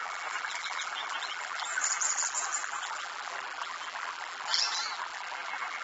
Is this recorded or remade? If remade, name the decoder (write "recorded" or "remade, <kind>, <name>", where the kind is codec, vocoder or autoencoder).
remade, vocoder, BigVGAN v2